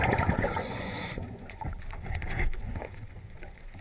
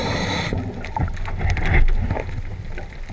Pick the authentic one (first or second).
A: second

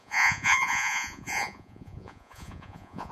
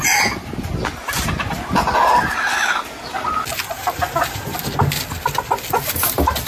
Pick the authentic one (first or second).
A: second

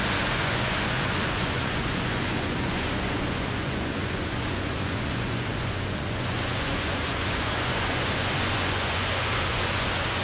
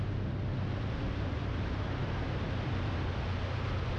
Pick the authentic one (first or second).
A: second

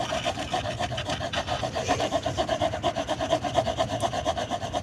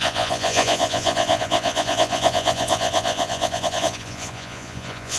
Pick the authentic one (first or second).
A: first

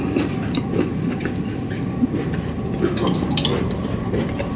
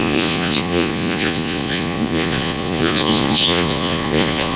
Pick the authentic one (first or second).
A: first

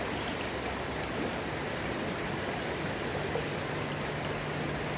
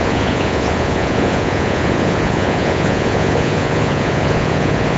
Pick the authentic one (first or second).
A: first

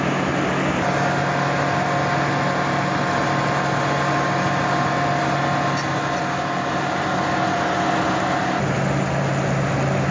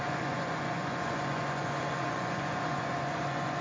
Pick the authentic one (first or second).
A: first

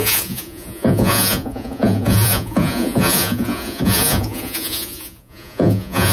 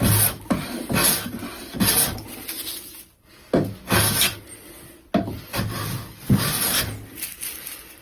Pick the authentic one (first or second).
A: second